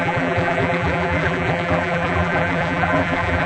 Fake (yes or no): yes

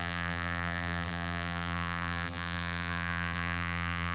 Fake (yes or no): yes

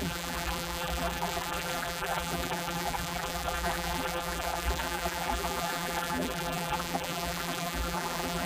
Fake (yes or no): yes